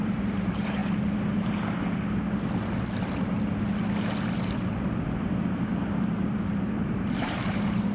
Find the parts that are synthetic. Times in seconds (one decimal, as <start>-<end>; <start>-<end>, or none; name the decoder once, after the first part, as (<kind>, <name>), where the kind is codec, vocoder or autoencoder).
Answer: 0.0-0.8 (vocoder, BigVGAN v2); 5.5-7.9